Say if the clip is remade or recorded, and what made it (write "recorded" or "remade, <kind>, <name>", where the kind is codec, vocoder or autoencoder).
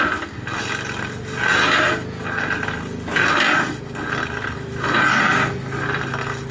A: recorded